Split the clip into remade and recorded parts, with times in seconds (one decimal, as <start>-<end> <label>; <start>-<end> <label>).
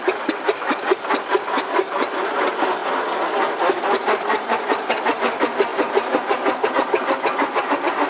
0.0-5.7 recorded; 5.7-6.7 remade; 6.7-8.1 recorded